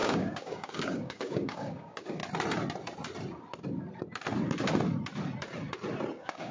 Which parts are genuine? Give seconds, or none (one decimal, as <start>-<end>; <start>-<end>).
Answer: 2.2-6.1